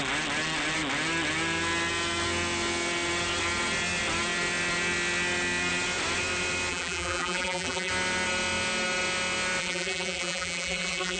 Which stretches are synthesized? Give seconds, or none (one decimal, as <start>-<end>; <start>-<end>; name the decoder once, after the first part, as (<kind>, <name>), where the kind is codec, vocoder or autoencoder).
6.7-7.9 (vocoder, BigVGAN v2); 9.6-11.2